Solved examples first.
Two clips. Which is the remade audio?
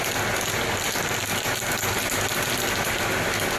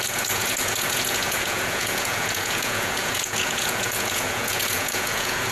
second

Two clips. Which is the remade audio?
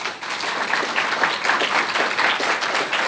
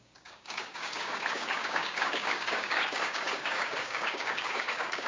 second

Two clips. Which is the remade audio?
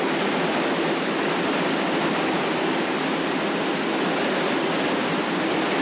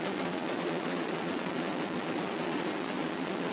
second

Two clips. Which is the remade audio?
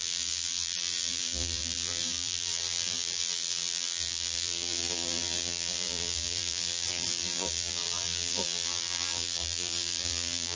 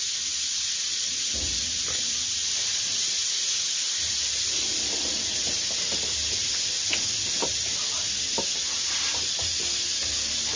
first